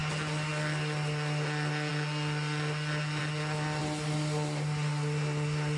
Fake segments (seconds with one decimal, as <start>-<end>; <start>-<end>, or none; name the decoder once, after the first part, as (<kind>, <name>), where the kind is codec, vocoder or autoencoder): none